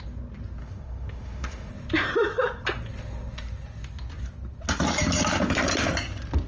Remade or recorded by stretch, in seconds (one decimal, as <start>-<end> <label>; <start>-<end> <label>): 0.0-0.6 recorded; 0.6-1.7 remade; 1.7-6.5 recorded